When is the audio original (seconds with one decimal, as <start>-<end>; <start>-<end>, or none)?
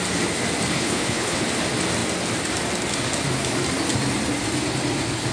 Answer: 0.0-0.7; 1.4-5.3